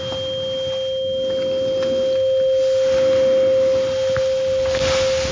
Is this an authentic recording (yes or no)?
yes